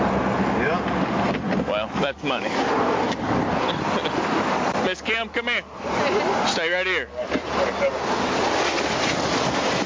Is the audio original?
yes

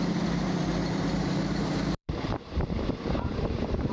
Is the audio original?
no